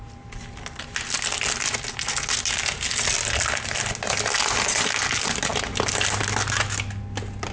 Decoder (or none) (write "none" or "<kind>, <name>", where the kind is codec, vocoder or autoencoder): none